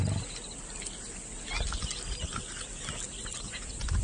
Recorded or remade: recorded